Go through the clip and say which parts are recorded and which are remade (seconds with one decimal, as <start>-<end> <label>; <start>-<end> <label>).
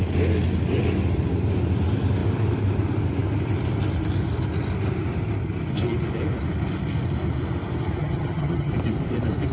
0.0-8.0 recorded; 8.0-8.7 remade; 8.7-9.5 recorded